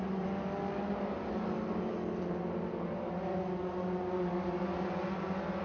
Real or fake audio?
real